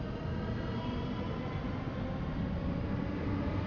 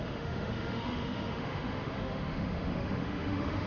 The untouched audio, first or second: first